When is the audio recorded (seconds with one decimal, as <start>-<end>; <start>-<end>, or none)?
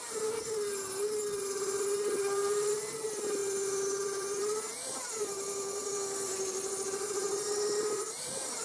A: 0.7-1.4